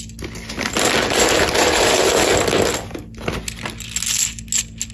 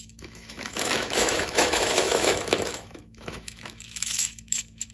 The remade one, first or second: second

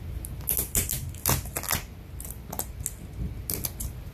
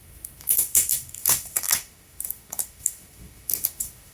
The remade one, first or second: second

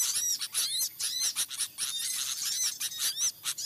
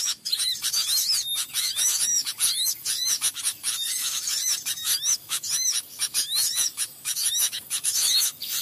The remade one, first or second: second